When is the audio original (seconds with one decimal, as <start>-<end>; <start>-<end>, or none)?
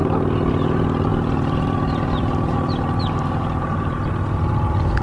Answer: 0.0-1.1; 4.1-5.0